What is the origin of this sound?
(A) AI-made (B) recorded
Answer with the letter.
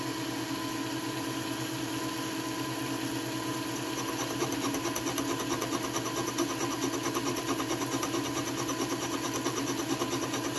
B